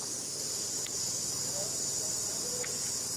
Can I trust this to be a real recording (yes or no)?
yes